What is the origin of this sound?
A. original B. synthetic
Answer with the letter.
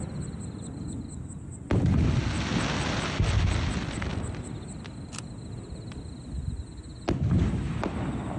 A